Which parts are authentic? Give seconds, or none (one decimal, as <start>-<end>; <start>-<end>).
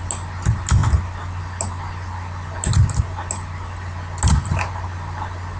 0.0-5.6